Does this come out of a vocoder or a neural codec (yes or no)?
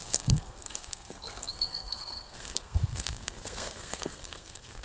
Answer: yes